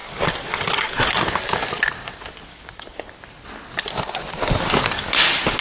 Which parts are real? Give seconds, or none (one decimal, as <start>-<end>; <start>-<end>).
1.2-2.5; 3.1-5.6